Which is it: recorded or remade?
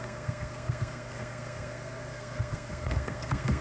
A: remade